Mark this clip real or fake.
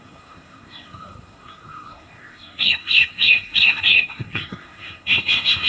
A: fake